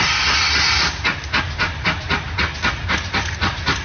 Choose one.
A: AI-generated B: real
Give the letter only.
B